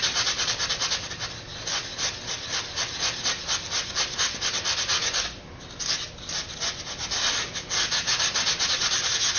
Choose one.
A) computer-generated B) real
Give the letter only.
B